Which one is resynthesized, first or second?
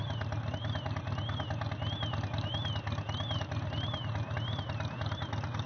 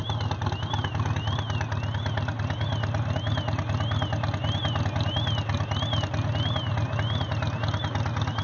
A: first